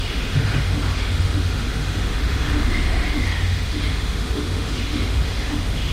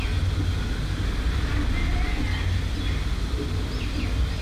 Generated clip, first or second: first